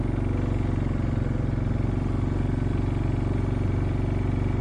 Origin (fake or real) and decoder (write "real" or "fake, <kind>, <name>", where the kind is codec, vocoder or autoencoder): real